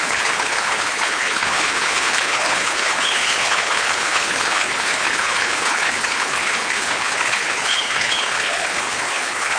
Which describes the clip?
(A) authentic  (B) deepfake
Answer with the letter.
B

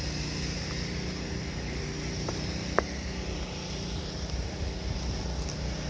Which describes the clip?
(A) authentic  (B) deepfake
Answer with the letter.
A